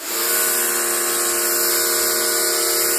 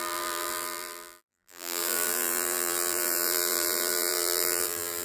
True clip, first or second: first